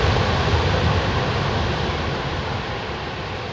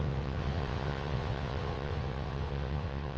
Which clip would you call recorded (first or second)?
first